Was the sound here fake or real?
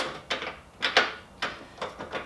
real